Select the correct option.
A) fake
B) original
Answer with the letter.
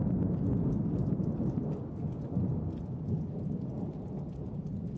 B